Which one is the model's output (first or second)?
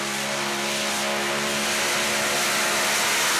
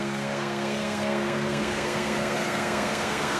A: second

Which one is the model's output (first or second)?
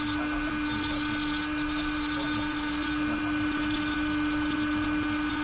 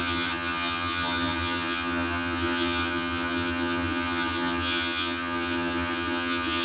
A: second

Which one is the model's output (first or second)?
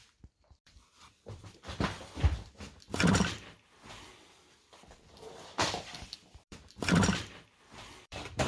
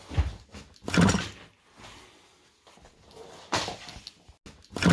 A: first